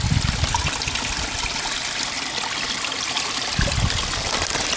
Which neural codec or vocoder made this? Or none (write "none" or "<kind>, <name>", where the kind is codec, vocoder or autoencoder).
none